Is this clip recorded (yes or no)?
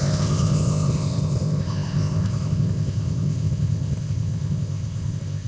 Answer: no